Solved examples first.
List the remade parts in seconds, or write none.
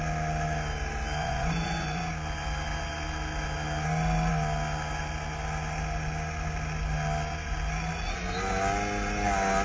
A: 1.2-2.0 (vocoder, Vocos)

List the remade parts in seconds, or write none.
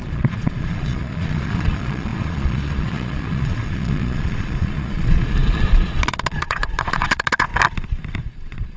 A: 0.0-7.5 (vocoder, Vocos); 8.2-8.8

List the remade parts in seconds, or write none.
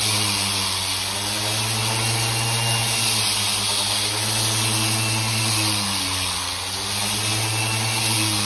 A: none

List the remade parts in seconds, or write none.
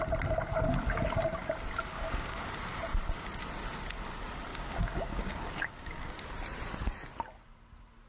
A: 1.9-2.4 (codec, DAC); 4.5-6.1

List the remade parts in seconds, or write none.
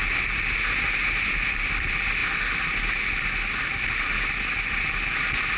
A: none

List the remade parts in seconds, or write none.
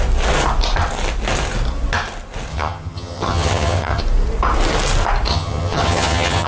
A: 2.5-4.0 (vocoder, HiFi-GAN); 5.3-6.5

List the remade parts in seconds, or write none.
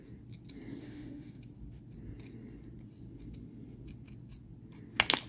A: 0.8-1.4 (autoencoder, DAC-VAE)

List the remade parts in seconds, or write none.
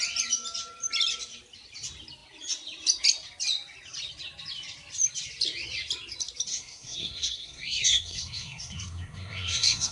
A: 6.5-9.9 (codec, SNAC)